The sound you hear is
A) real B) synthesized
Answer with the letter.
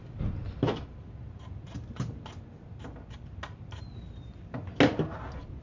A